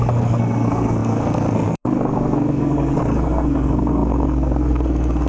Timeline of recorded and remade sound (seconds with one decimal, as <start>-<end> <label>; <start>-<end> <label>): 0.0-5.3 remade